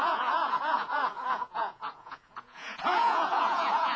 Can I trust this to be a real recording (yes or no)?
no